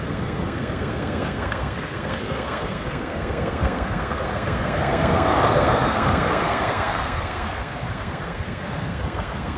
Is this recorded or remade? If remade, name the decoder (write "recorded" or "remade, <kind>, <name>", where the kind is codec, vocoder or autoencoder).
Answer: remade, codec, SNAC